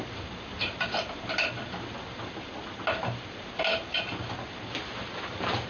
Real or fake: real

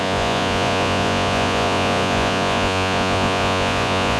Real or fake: fake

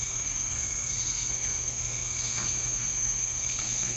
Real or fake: fake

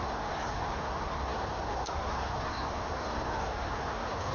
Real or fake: fake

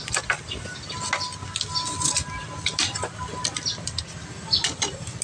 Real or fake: real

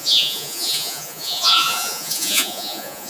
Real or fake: fake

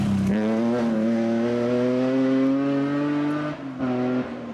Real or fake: real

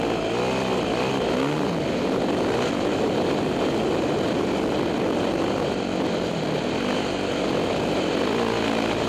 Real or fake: real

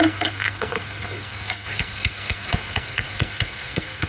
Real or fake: fake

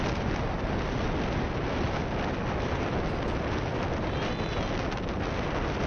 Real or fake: real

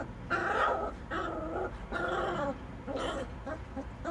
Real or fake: fake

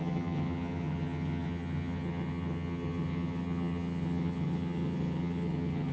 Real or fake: fake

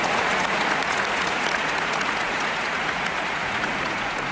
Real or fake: fake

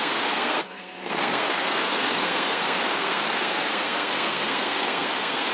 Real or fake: fake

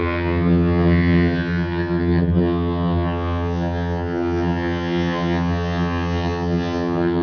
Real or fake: fake